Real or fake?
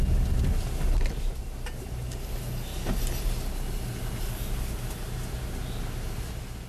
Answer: real